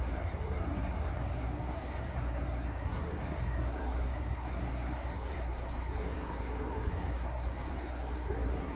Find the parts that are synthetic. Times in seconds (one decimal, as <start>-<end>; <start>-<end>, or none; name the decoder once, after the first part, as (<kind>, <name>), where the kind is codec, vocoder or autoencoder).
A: 0.0-8.8 (codec, SNAC)